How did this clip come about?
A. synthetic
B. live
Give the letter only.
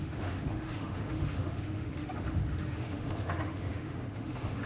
A